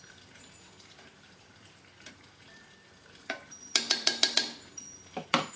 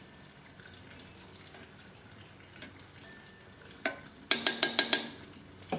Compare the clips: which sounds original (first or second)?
second